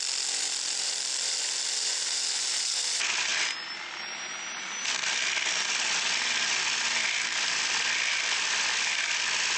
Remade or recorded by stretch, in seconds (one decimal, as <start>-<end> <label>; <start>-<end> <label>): 0.0-9.6 recorded